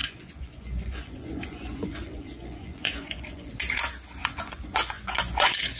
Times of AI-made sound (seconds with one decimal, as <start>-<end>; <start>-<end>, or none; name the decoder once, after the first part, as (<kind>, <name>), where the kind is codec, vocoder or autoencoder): 0.0-3.5 (vocoder, Vocos); 4.2-5.8